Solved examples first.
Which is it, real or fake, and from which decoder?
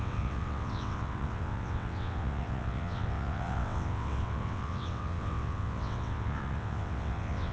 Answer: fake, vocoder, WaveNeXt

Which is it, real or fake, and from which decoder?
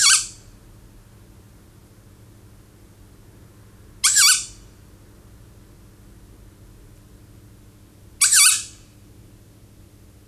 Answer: real